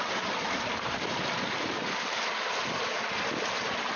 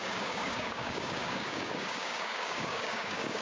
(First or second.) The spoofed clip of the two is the second